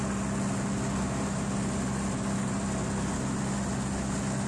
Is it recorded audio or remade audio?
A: recorded